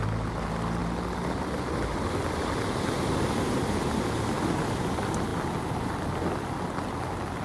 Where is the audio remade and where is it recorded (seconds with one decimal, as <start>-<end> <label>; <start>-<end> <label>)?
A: 0.0-7.4 recorded